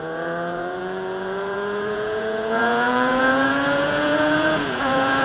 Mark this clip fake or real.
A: fake